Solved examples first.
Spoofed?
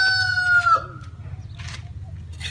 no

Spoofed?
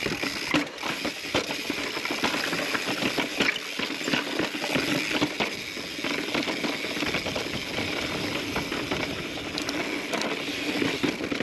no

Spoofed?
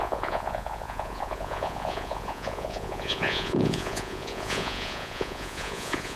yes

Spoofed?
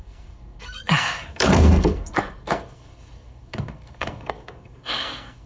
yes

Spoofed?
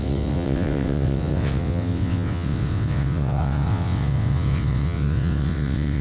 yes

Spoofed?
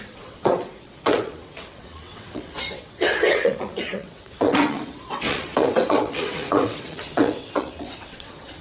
yes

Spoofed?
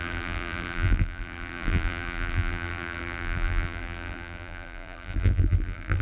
yes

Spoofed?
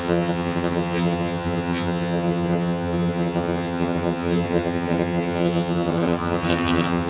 yes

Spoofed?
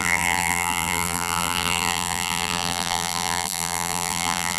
yes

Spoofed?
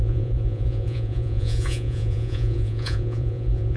yes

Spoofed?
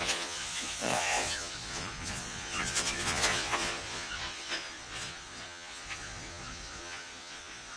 yes